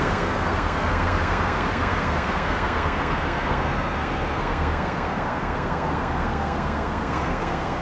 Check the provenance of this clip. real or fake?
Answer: fake